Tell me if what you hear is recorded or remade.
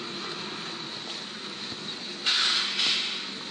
recorded